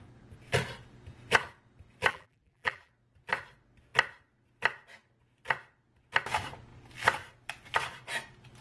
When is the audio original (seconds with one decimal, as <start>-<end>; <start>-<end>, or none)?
0.0-2.1; 2.9-8.6